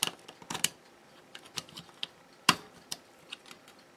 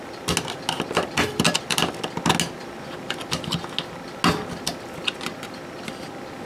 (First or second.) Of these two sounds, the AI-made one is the first